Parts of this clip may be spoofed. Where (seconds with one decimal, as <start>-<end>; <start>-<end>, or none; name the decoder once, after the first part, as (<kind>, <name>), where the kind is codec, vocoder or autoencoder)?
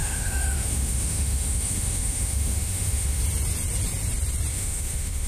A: 0.0-3.2 (autoencoder, DAC-VAE); 4.5-5.3